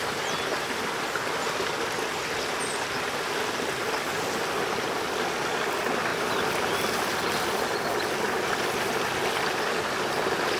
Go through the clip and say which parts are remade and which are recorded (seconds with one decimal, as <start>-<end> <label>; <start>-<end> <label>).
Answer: 0.0-10.6 recorded

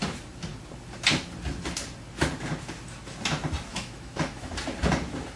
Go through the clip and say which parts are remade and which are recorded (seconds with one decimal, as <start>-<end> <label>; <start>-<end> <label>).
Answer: 0.0-3.7 recorded; 3.7-4.5 remade; 4.5-5.4 recorded

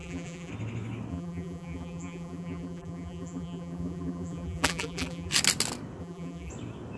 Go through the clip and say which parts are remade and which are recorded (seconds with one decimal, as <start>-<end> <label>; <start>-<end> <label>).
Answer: 0.0-0.5 remade; 0.5-1.1 recorded; 1.1-5.3 remade; 5.3-6.0 recorded; 6.0-6.5 remade; 6.5-7.0 recorded

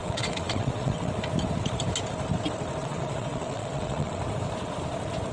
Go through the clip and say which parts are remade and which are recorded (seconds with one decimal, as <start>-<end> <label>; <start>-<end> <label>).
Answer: 0.0-1.1 remade; 1.1-2.8 recorded; 2.8-4.2 remade; 4.2-5.3 recorded

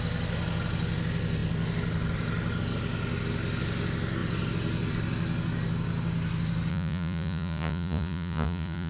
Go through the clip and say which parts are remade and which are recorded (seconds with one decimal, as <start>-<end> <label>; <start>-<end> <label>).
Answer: 0.0-6.7 recorded; 6.7-8.9 remade

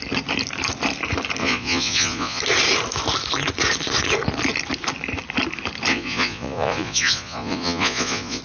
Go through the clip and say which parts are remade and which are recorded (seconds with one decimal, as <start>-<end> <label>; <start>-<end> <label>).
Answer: 0.0-1.4 recorded; 1.4-2.4 remade; 2.4-5.9 recorded; 5.9-8.4 remade

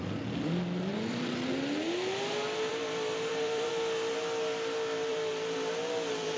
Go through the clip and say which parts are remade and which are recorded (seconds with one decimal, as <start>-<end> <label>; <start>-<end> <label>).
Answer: 0.0-0.9 recorded; 0.9-1.5 remade; 1.5-2.7 recorded; 2.7-3.7 remade; 3.7-5.1 recorded; 5.1-6.4 remade